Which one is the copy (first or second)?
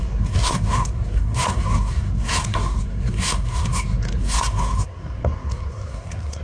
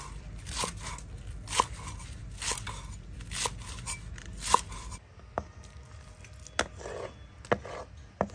first